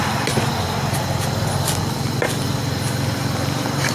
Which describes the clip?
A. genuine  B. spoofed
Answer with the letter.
A